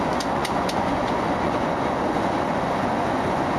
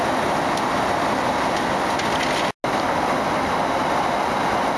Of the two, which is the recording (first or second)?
second